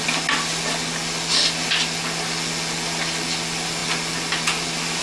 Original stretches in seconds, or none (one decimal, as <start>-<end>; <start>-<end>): 0.0-5.0